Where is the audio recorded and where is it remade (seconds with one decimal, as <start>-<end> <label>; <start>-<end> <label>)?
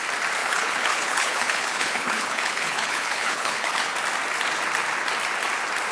0.0-0.4 recorded; 0.4-3.9 remade; 3.9-5.9 recorded